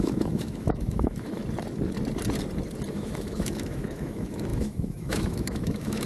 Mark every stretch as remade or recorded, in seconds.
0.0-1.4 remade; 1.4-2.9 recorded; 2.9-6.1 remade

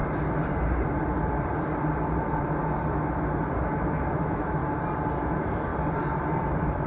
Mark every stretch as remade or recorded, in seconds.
0.0-4.1 recorded; 4.1-4.6 remade; 4.6-5.2 recorded; 5.2-5.7 remade; 5.7-6.9 recorded

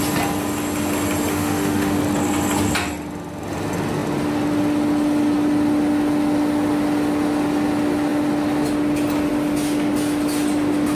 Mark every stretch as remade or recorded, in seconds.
0.0-1.3 recorded; 1.3-2.0 remade; 2.0-10.9 recorded

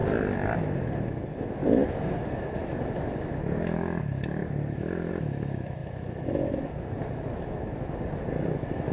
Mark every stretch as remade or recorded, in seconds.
0.0-0.6 recorded; 0.6-8.9 remade